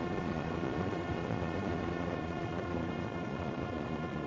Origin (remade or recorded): remade